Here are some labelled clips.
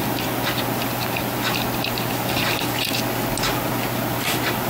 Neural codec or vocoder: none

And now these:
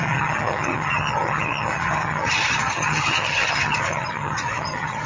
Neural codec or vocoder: vocoder, HiFi-GAN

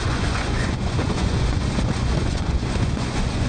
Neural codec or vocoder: vocoder, Vocos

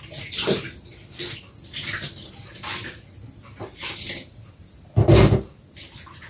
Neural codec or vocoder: none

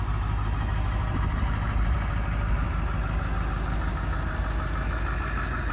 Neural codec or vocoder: none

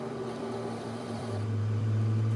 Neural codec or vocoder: vocoder, BigVGAN v2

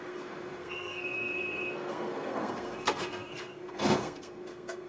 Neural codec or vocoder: codec, SNAC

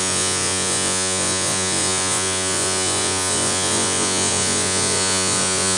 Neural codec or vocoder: vocoder, Vocos